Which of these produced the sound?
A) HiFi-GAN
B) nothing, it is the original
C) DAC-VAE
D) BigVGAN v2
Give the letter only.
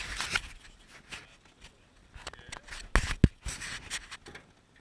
B